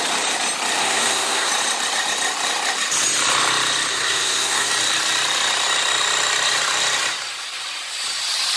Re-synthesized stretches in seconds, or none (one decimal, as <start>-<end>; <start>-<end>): 0.8-1.5; 3.9-4.7